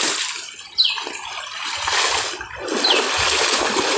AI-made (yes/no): no